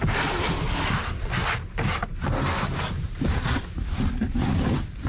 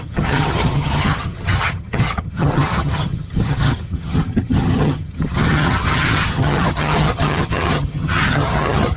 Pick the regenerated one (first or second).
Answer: second